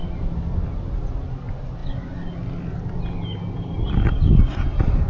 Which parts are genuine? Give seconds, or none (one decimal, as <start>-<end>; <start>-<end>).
0.0-5.1